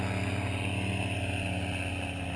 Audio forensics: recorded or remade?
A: recorded